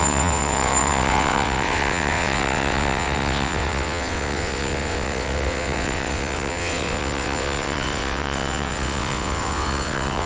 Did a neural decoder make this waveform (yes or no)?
yes